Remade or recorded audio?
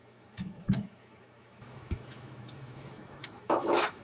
remade